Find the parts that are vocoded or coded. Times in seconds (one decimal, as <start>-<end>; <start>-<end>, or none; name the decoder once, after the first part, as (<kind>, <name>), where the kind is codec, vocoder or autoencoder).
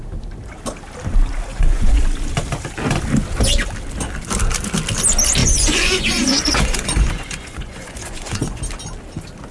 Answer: 1.5-2.0 (vocoder, Vocos); 5.4-8.6